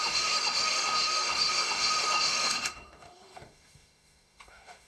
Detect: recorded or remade remade